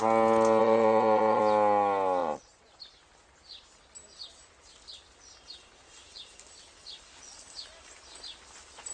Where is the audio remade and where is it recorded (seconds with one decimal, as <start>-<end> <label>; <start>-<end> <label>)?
0.0-0.6 recorded; 0.6-1.4 remade; 1.4-2.2 recorded; 2.2-2.8 remade; 2.8-8.9 recorded